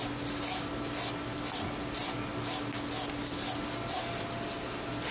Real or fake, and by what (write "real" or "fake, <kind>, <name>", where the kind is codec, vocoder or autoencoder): real